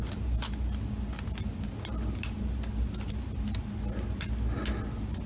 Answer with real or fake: real